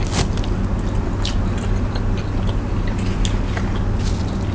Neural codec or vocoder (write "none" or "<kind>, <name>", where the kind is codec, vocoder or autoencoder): none